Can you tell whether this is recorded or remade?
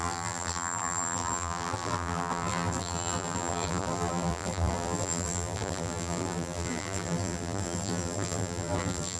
remade